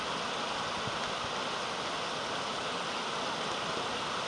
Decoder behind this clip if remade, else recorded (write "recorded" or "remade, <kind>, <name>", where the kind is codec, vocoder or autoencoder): recorded